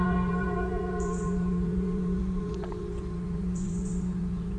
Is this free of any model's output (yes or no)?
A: no